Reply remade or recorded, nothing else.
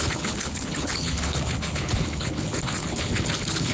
remade